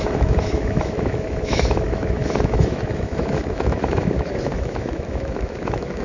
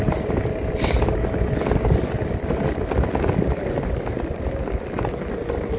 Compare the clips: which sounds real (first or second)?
second